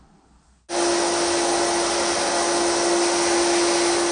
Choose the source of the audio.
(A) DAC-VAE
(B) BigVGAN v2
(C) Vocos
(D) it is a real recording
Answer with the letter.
D